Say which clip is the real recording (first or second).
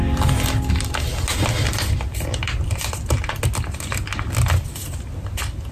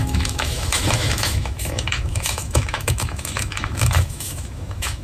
first